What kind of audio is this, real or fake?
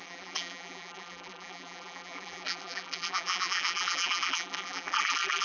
fake